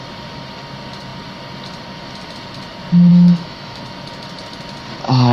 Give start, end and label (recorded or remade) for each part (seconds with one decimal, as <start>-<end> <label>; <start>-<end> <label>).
0.0-3.1 recorded; 3.1-3.8 remade; 3.8-5.3 recorded